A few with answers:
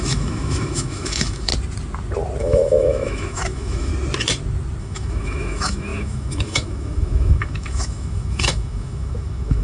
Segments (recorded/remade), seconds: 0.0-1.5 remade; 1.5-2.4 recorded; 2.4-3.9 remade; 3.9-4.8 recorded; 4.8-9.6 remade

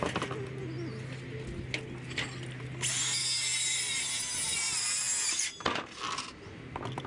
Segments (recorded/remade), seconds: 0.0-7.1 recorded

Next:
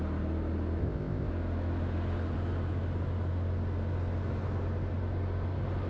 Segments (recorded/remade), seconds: 0.0-0.8 recorded; 0.8-1.3 remade; 1.3-5.9 recorded

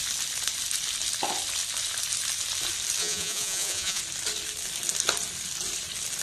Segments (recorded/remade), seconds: 0.0-3.0 recorded; 3.0-4.0 remade; 4.0-6.2 recorded

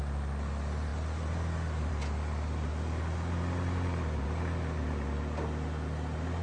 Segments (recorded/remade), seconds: 0.0-6.4 recorded

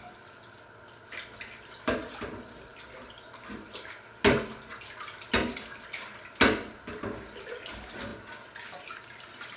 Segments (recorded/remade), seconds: 0.0-9.6 recorded